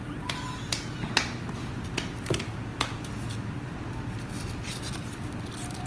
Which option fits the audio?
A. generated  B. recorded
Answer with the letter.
B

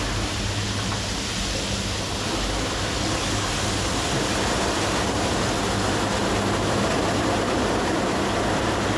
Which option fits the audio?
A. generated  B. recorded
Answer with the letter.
B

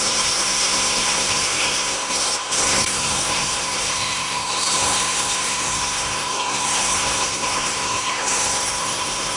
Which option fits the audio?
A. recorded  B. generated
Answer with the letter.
B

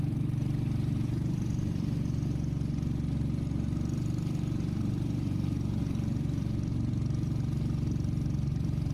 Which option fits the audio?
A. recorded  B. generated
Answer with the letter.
A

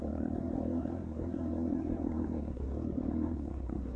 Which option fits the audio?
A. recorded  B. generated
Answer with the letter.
B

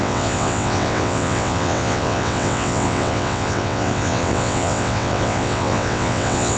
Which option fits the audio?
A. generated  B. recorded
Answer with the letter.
A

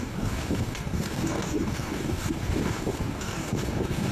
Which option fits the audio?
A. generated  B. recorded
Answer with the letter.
A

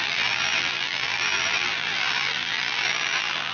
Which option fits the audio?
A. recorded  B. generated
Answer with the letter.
B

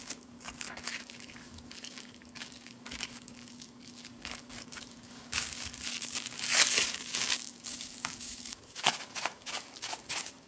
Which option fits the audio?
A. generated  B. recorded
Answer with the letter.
A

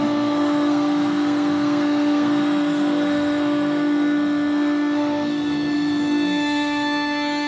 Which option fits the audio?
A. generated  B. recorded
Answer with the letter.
A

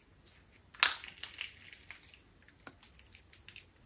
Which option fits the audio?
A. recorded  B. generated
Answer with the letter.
A